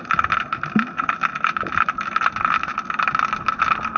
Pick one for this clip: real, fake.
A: real